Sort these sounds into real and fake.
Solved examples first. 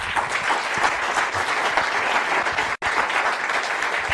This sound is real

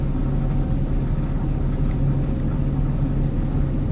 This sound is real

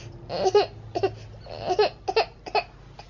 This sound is real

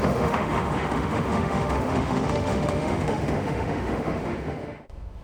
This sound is fake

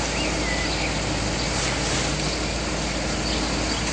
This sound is real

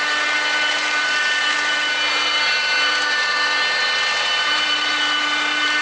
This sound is real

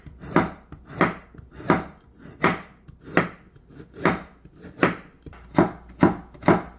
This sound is real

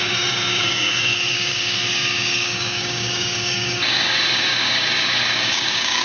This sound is fake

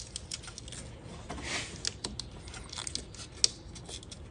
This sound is real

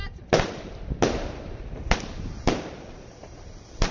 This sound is fake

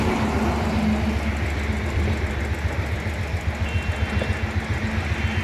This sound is real